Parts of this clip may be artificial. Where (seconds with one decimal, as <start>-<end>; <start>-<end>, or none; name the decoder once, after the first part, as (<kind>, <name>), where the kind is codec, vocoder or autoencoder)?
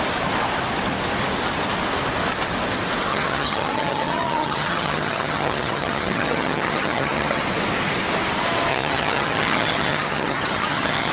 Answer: 3.1-7.4 (vocoder, HiFi-GAN); 8.7-11.1